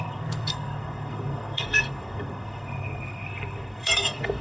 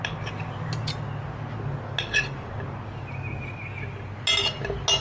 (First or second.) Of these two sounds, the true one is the second